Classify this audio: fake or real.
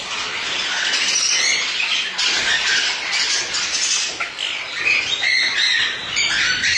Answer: real